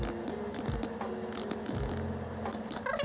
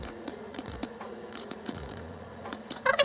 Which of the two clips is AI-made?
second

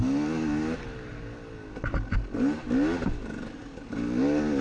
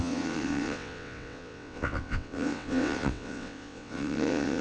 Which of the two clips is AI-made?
second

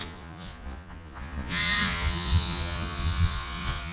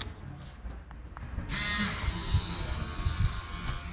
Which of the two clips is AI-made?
first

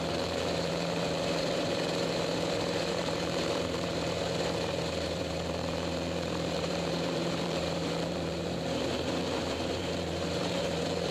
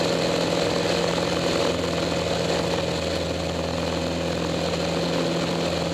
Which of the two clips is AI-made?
first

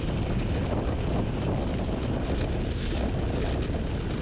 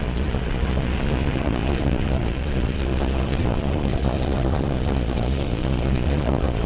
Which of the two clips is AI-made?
second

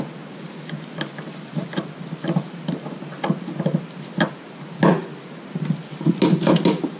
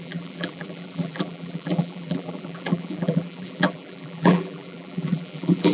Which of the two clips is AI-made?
second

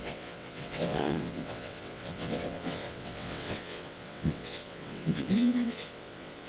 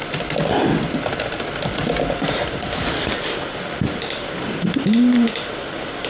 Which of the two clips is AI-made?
first